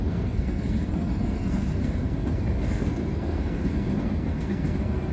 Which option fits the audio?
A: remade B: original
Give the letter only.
A